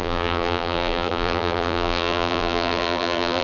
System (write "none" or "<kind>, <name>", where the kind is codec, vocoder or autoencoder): vocoder, BigVGAN v2